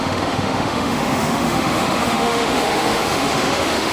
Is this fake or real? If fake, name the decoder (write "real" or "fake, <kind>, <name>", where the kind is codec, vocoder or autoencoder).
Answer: fake, autoencoder, DAC-VAE